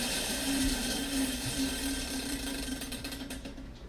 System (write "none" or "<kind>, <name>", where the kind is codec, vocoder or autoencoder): vocoder, BigVGAN v2